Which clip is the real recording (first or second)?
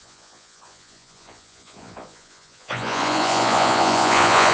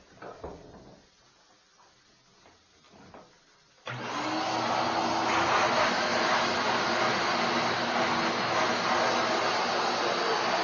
second